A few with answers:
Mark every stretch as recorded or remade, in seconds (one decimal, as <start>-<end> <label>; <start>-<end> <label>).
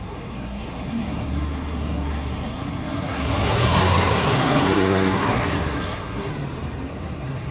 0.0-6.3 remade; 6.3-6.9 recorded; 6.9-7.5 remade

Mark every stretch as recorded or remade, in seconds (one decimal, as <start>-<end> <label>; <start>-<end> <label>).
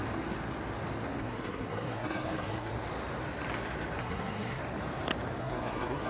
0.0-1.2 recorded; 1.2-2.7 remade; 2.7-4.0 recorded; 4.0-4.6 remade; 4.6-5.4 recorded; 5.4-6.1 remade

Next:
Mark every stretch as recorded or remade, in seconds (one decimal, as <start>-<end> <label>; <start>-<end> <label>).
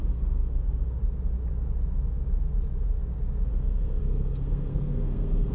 0.0-1.0 remade; 1.0-3.5 recorded; 3.5-5.5 remade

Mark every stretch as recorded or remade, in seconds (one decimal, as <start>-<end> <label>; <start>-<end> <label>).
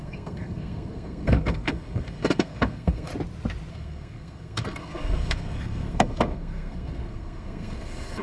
0.0-3.1 remade; 3.1-3.7 recorded; 3.7-8.2 remade